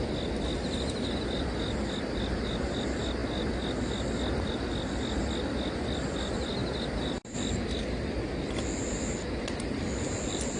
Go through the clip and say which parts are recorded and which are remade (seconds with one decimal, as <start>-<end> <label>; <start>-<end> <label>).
0.0-10.6 recorded

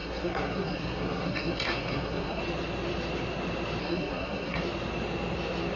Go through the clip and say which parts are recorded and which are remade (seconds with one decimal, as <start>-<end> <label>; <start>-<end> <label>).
0.0-2.4 remade; 2.4-3.8 recorded; 3.8-4.6 remade; 4.6-5.8 recorded